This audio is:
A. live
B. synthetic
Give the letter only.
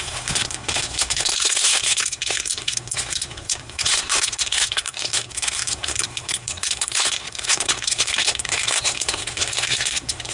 B